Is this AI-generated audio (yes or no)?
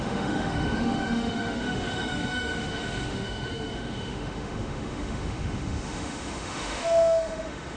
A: yes